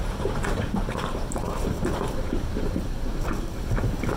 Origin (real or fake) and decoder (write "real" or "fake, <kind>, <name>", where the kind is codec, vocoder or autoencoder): fake, vocoder, BigVGAN v2